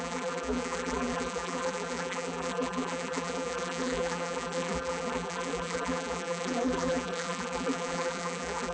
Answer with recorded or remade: remade